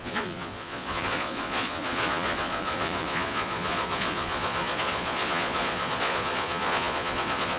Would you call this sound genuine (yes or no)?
no